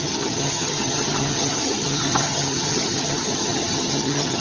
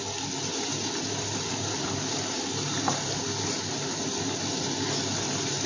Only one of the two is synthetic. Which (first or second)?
first